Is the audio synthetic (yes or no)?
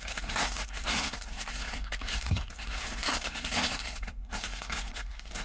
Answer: yes